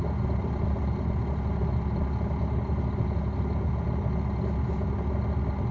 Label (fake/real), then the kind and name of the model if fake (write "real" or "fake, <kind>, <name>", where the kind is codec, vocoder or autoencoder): real